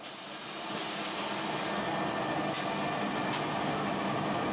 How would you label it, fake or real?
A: real